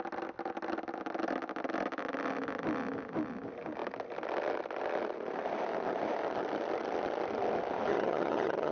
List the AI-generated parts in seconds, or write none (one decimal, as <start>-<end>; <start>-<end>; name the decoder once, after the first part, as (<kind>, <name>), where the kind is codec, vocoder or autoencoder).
7.9-8.7 (vocoder, HiFi-GAN)